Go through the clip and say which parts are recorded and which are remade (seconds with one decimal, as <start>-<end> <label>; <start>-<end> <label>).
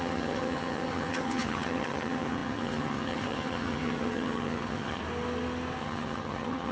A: 0.0-5.0 remade; 5.0-5.8 recorded; 5.8-6.7 remade